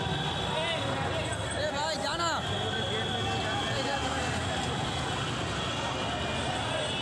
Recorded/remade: recorded